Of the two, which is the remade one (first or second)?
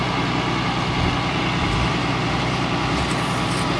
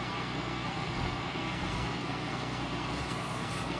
second